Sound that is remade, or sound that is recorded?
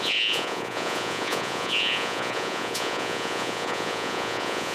remade